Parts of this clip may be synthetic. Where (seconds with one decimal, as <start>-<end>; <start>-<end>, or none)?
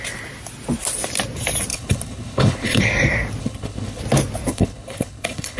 1.7-2.8; 3.4-4.0; 4.5-5.6